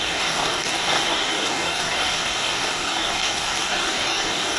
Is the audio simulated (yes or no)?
yes